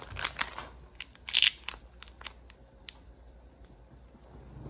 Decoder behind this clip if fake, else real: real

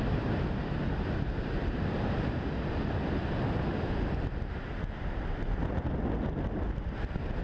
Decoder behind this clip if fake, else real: real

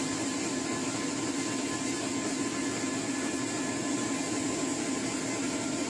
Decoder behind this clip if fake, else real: real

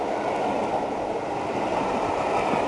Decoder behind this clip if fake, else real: real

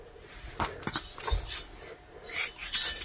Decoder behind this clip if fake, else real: real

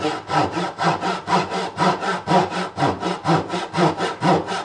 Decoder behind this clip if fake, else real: real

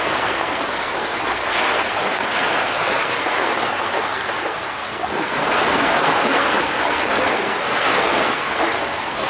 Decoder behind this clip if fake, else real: fake, codec, SNAC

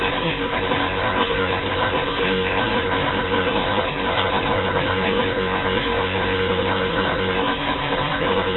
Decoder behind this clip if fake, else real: fake, codec, SNAC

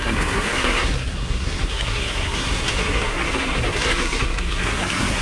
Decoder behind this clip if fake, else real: fake, codec, SNAC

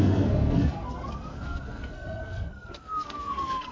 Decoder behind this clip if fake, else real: fake, codec, SNAC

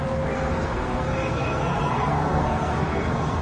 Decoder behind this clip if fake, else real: fake, codec, SNAC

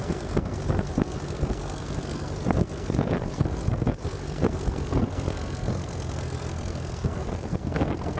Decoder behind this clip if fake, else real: fake, codec, SNAC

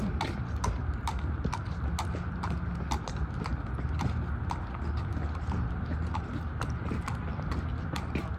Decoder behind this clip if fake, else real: real